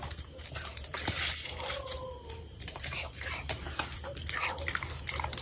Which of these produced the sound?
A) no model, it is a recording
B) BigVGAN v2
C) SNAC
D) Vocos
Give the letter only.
B